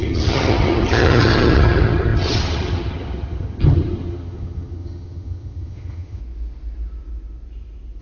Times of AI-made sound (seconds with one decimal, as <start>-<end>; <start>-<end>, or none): 0.0-6.2